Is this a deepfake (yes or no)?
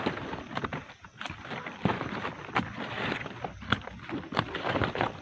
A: no